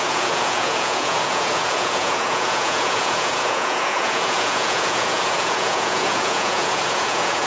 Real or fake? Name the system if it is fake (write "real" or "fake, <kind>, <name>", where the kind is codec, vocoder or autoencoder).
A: fake, vocoder, Vocos